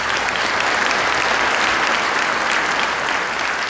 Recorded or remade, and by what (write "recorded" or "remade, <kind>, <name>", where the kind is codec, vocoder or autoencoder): recorded